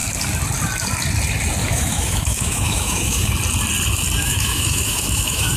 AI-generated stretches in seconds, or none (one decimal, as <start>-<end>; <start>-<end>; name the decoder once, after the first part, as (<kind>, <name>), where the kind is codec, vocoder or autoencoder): 1.6-3.3 (autoencoder, DAC-VAE); 4.2-5.6